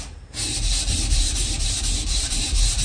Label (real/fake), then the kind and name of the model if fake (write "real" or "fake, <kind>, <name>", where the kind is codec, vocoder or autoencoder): fake, vocoder, BigVGAN v2